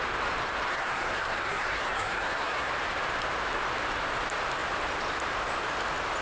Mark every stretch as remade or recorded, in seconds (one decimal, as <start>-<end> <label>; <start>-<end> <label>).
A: 0.0-0.7 recorded; 0.7-2.7 remade; 2.7-6.2 recorded